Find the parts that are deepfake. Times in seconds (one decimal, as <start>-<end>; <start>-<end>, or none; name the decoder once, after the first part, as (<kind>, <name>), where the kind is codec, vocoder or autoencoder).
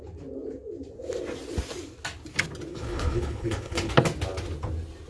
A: 2.7-3.9 (codec, HILCodec)